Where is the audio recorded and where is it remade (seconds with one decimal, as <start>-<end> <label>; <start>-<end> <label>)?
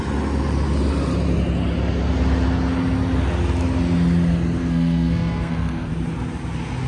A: 0.0-4.6 recorded; 4.6-5.9 remade; 5.9-6.9 recorded